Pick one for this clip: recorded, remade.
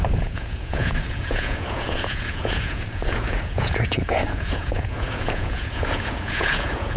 remade